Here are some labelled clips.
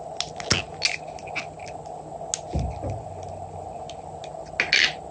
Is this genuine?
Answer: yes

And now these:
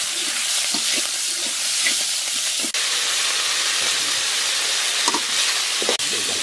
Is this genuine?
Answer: yes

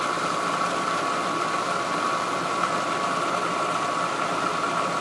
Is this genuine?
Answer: yes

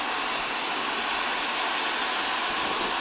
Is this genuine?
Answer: yes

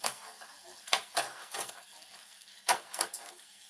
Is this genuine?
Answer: no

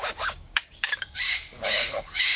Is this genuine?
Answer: no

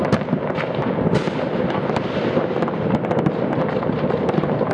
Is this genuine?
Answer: yes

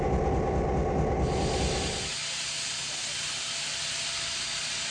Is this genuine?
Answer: yes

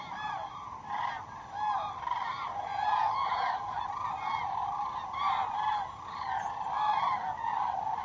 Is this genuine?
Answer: yes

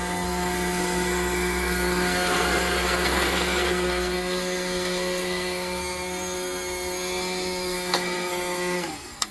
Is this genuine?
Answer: no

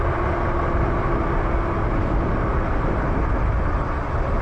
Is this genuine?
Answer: no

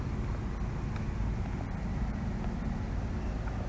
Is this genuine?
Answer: yes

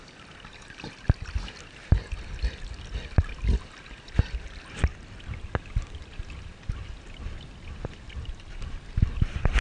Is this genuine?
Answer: yes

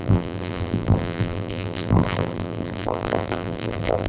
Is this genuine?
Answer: no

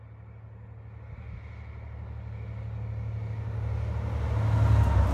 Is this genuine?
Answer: yes